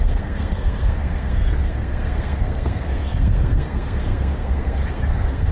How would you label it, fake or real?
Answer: fake